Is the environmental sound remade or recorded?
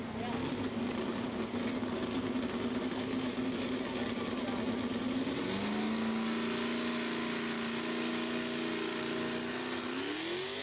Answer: recorded